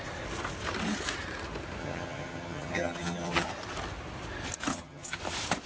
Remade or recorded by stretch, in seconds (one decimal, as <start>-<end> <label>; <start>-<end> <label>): 0.0-1.8 recorded; 1.8-3.5 remade; 3.5-4.7 recorded; 4.7-5.2 remade; 5.2-5.7 recorded